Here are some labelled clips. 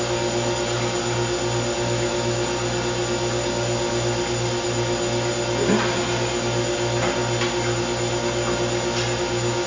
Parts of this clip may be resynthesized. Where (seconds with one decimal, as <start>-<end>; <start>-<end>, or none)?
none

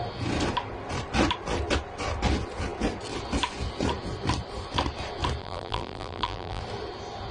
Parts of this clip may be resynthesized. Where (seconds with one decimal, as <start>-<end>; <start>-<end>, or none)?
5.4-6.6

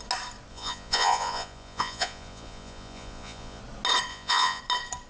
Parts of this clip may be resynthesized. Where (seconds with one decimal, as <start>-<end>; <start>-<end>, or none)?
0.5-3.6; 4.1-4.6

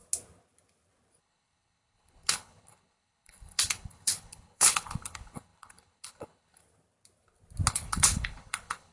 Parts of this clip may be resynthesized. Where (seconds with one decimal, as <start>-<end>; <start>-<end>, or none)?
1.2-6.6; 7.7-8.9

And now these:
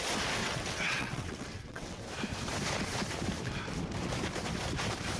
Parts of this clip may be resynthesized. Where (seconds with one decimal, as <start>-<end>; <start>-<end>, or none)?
0.4-2.0

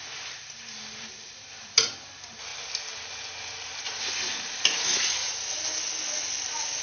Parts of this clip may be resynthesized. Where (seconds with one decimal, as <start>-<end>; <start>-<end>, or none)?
none

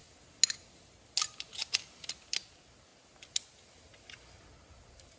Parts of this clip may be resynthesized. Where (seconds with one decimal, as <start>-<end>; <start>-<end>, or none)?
none